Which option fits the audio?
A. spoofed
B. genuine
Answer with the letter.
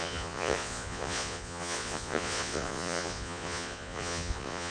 A